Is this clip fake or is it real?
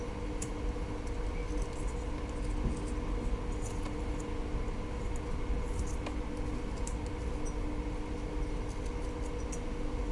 real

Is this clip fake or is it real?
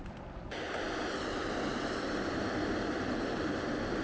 real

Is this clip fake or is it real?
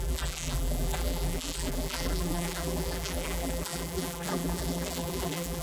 fake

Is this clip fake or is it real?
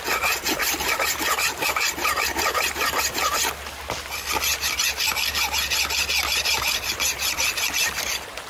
real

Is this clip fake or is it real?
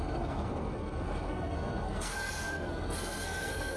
fake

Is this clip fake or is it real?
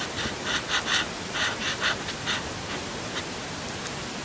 real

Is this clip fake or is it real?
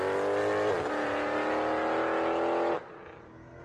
real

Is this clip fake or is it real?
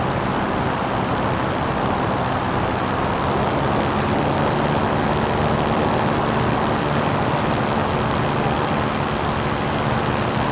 real